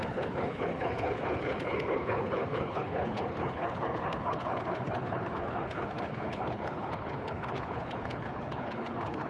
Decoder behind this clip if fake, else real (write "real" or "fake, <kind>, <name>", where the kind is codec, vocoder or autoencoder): fake, codec, HILCodec